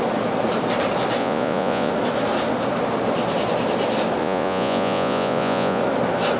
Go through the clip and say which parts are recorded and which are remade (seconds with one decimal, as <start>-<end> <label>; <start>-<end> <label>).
0.0-1.2 recorded; 1.2-1.9 remade; 1.9-4.2 recorded; 4.2-5.8 remade; 5.8-6.4 recorded